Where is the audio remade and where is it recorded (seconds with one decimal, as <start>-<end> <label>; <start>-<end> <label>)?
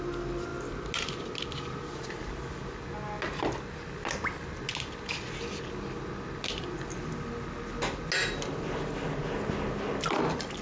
0.0-10.6 recorded